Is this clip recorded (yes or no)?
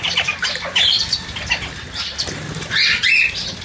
yes